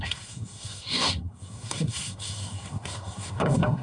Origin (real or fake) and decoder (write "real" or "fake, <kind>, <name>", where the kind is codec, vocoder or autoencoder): fake, codec, SNAC